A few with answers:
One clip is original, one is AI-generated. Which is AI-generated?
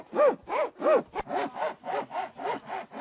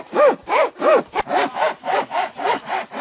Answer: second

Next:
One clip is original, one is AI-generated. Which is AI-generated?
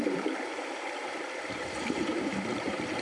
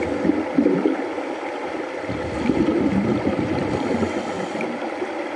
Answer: first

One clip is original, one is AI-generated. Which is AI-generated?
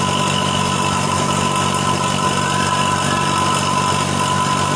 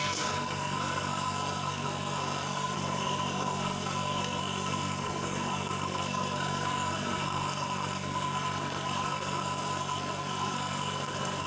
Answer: second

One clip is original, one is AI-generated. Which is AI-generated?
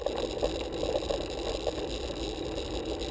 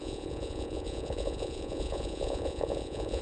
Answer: second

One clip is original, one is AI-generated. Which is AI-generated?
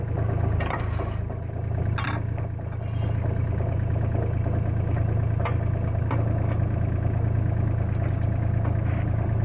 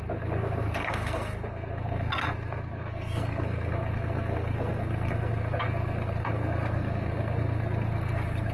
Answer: second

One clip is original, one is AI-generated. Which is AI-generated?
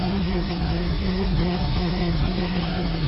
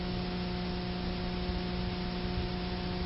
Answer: first